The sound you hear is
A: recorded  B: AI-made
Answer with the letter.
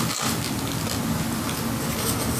A